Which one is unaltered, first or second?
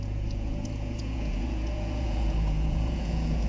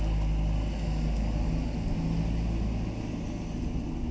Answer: second